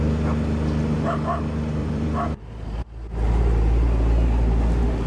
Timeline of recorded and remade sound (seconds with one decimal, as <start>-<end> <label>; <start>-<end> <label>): 0.0-1.8 recorded; 1.8-2.8 remade; 2.8-5.1 recorded